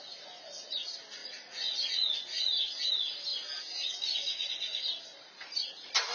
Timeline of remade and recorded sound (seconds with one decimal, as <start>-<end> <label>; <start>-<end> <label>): 0.0-1.2 recorded; 1.2-2.8 remade; 2.8-6.1 recorded